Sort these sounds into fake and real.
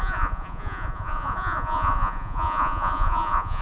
fake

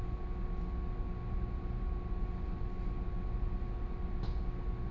real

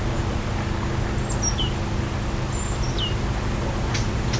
real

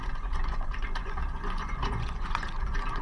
fake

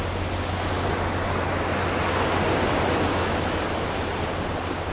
real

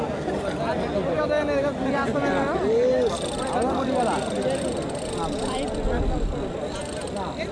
real